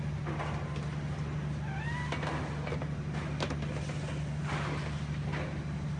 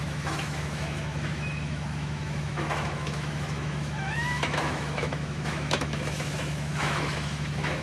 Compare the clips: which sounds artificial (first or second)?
second